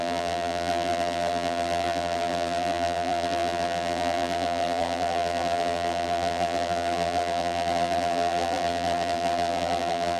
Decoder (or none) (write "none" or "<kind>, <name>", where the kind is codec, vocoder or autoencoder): vocoder, BigVGAN v2